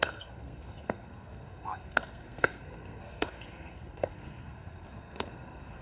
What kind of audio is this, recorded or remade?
remade